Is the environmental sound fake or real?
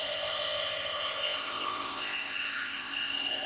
fake